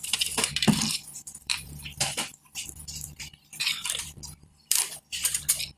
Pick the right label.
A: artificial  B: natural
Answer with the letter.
A